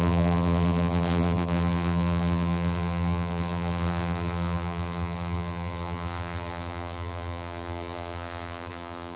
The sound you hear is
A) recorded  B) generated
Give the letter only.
B